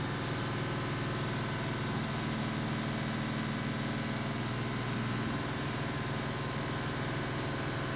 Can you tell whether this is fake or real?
real